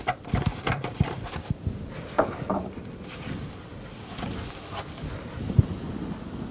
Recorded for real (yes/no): no